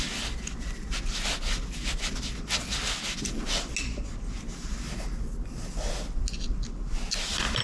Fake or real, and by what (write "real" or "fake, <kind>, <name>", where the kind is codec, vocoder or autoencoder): real